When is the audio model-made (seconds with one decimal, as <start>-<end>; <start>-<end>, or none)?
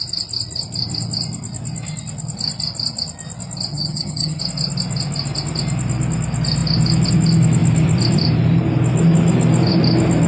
3.7-4.4